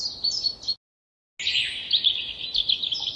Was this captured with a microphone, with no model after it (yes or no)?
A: yes